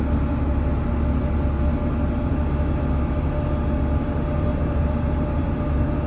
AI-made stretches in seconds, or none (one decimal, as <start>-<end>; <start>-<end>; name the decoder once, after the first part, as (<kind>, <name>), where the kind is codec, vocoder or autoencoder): 4.5-5.5 (vocoder, BigVGAN v2)